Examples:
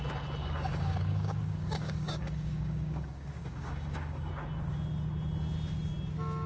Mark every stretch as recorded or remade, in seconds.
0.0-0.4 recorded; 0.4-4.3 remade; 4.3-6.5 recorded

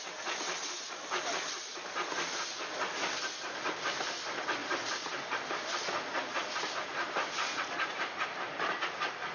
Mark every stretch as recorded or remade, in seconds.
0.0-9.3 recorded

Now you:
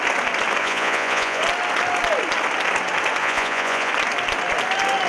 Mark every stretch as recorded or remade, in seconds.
0.0-0.6 recorded; 0.6-1.4 remade; 1.4-3.2 recorded; 3.2-3.9 remade; 3.9-5.1 recorded

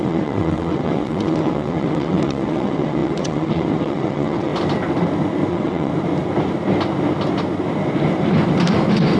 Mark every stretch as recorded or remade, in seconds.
0.0-4.5 remade; 4.5-5.5 recorded; 5.5-5.9 remade; 5.9-9.2 recorded

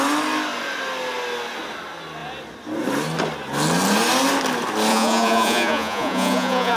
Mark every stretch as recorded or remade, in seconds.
0.0-4.9 recorded; 4.9-6.8 remade

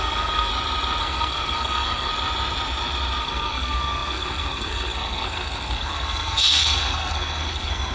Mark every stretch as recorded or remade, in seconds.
0.0-0.5 remade; 0.5-1.0 recorded; 1.0-2.1 remade; 2.1-3.2 recorded; 3.2-7.9 remade

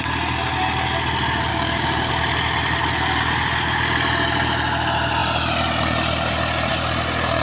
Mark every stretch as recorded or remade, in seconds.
0.0-1.5 recorded; 1.5-2.1 remade; 2.1-7.4 recorded